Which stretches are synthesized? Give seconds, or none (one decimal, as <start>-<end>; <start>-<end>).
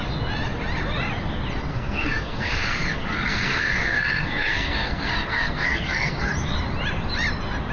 1.7-6.3